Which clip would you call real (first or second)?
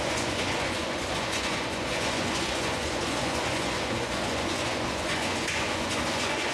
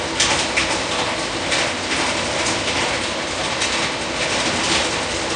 second